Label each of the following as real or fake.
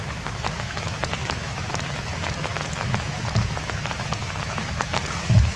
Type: fake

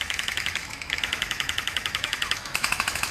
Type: fake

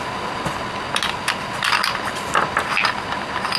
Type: real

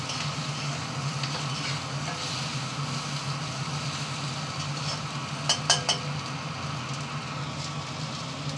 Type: real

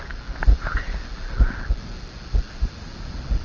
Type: real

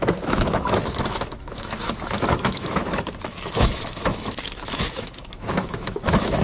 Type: fake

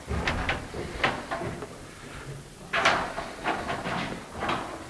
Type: real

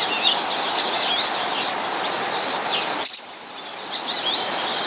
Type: real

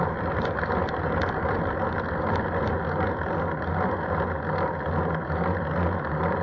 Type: real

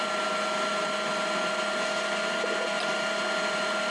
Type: real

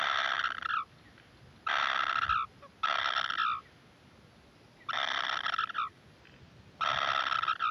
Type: real